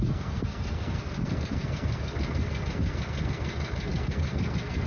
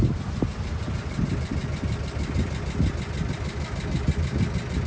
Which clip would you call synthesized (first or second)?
first